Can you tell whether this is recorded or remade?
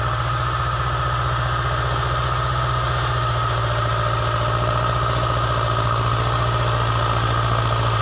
recorded